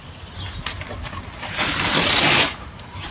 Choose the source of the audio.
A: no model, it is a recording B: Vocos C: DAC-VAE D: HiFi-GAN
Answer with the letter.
A